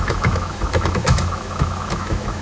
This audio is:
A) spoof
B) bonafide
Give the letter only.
A